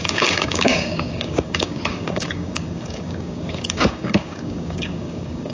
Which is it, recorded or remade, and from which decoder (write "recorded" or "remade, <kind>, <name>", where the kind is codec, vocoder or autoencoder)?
remade, codec, DAC